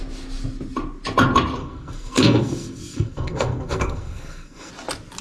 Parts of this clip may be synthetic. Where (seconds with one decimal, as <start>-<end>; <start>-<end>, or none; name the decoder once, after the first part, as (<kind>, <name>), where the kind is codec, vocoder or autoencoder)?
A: 1.6-4.7 (codec, SNAC)